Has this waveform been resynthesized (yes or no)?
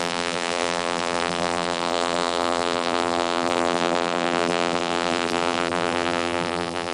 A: yes